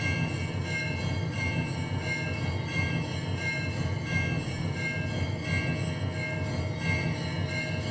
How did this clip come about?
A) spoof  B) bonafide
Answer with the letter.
B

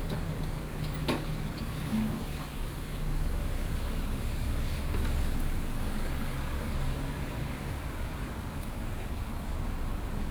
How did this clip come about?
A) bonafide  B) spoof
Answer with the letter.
B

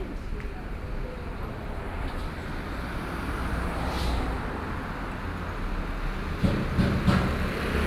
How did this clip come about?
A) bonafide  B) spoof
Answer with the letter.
A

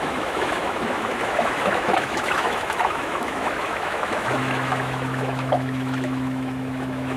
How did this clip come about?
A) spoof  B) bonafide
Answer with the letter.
A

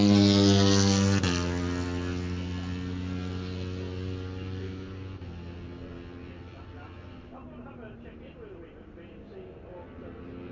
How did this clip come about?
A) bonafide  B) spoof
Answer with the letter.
A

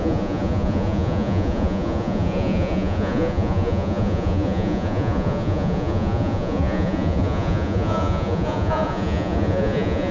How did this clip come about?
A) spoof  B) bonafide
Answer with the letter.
A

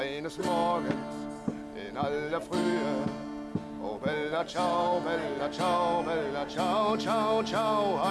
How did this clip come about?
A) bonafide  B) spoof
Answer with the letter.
A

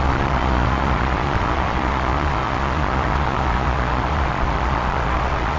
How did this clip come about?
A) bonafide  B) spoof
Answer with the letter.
B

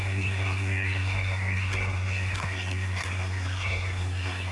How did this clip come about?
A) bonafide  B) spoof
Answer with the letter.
B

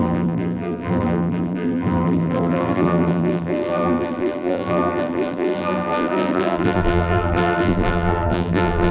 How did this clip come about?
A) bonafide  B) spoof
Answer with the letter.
B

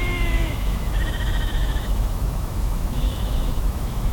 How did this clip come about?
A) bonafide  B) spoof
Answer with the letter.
B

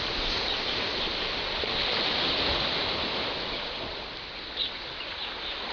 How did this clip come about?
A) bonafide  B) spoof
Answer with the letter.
A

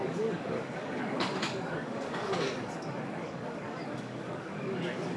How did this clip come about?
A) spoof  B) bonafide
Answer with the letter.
A